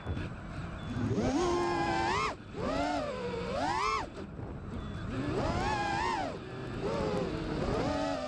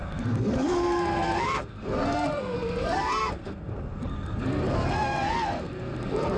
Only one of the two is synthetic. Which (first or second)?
second